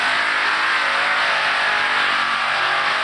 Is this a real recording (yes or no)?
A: yes